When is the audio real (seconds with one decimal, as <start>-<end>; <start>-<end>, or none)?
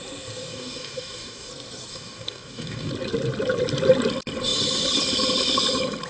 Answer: 0.0-0.5; 1.5-1.9; 2.9-6.1